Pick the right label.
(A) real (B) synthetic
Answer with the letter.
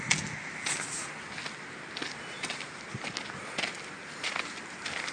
A